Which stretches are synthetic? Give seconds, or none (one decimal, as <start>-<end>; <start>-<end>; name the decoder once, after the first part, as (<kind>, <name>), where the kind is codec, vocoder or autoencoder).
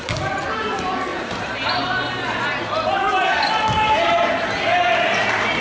none